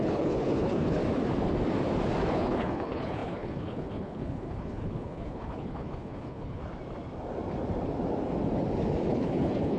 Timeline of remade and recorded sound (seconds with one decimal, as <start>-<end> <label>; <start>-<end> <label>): 0.0-1.0 remade; 1.0-2.3 recorded; 2.3-6.6 remade; 6.6-9.1 recorded; 9.1-9.8 remade